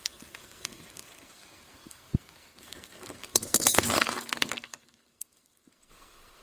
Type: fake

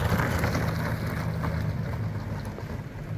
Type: real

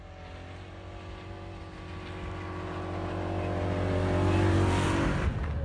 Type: real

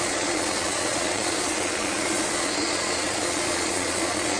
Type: fake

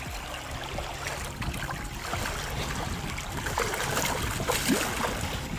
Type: real